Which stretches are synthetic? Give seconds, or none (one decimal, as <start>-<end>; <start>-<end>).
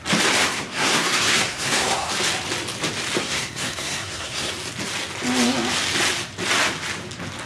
0.4-2.1; 3.2-4.5